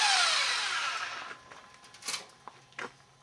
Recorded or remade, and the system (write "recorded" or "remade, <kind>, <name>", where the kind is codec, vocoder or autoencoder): recorded